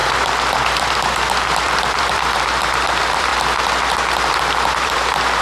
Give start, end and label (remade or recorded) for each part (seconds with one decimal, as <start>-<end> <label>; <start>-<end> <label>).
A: 0.0-3.3 remade; 3.3-4.3 recorded; 4.3-5.4 remade